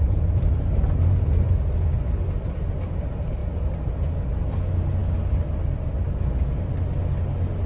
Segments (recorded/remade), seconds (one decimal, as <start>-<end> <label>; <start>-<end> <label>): 0.0-7.7 recorded